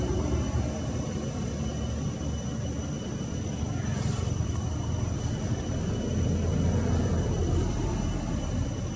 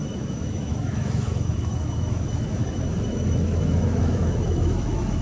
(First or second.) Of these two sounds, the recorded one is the first